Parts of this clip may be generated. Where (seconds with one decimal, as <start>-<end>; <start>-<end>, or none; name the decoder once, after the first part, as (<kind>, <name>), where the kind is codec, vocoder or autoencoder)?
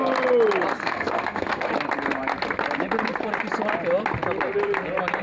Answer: 0.8-1.7 (codec, SNAC)